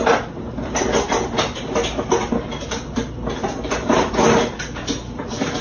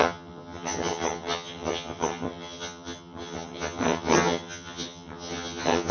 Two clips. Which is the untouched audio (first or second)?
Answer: first